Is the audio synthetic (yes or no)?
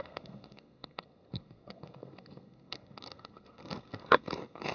yes